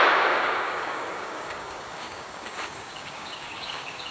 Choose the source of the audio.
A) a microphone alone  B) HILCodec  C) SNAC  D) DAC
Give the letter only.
D